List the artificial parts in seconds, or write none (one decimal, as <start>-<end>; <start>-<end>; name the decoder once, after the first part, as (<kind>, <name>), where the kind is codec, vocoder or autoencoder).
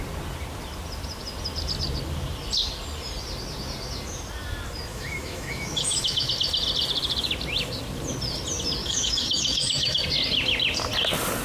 4.9-6.3 (autoencoder, DAC-VAE); 8.8-10.0